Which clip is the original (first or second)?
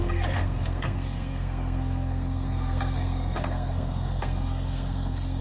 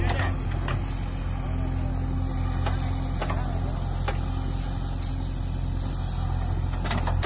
second